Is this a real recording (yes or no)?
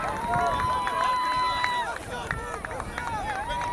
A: yes